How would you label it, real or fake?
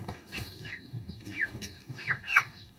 fake